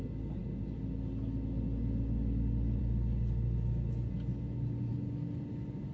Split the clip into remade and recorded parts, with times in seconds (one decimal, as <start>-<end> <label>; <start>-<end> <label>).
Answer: 0.0-5.9 recorded

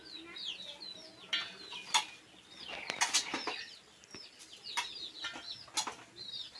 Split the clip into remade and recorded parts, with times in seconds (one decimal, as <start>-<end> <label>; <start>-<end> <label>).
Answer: 0.0-6.6 recorded

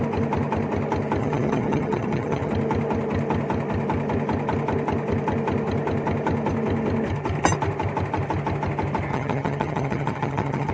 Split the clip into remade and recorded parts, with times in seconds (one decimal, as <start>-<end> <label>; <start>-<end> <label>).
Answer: 0.0-1.2 recorded; 1.2-2.5 remade; 2.5-9.1 recorded; 9.1-10.7 remade

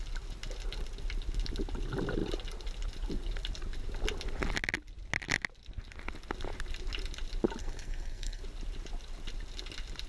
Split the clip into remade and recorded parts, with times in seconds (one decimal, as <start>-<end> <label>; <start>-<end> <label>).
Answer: 0.0-7.6 recorded; 7.6-8.4 remade; 8.4-10.1 recorded

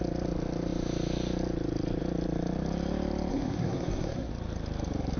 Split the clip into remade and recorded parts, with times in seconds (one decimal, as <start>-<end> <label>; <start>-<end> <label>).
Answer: 0.0-3.3 recorded; 3.3-4.3 remade; 4.3-5.2 recorded

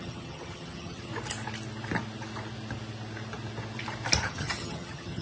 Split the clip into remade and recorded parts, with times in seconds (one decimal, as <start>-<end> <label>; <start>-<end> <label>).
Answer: 0.0-1.1 remade; 1.1-4.2 recorded; 4.2-5.2 remade